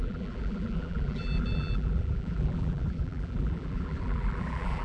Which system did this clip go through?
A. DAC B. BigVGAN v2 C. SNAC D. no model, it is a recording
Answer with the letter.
B